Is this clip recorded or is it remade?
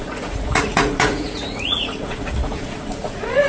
remade